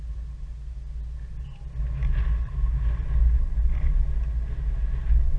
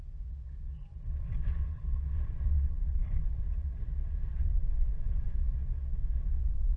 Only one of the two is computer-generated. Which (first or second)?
second